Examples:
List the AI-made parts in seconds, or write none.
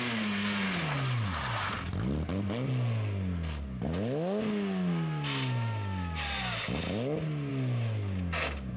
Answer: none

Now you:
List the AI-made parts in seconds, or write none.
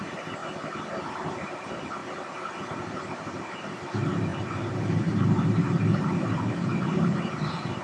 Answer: 0.0-0.4 (vocoder, BigVGAN v2); 1.1-2.0; 2.6-7.8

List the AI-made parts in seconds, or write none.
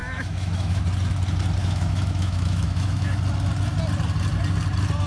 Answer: 0.0-0.8 (autoencoder, DAC-VAE); 1.6-3.2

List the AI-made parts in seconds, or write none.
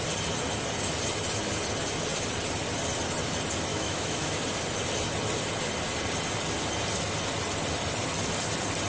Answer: 3.7-4.4 (autoencoder, DAC-VAE)